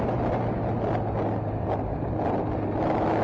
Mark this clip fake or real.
real